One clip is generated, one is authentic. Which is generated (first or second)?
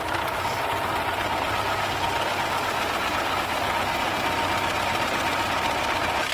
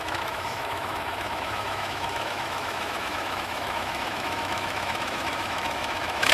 second